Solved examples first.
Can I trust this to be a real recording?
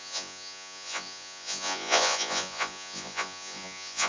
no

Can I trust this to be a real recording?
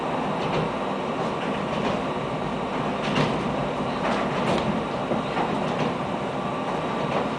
yes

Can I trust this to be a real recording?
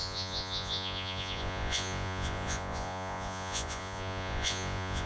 no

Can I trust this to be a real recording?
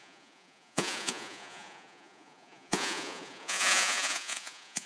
no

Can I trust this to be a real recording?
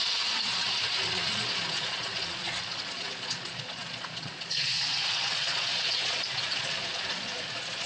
no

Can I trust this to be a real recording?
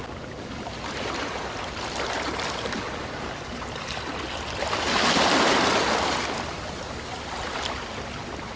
yes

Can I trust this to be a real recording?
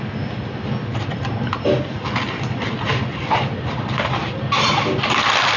yes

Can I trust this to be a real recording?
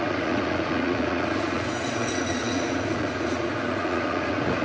no